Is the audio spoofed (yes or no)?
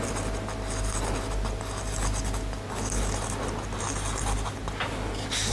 no